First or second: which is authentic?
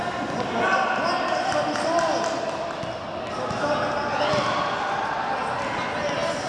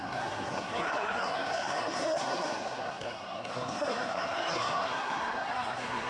first